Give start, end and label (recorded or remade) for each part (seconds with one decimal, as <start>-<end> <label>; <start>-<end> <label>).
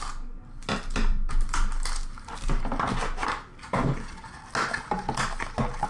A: 0.0-5.9 recorded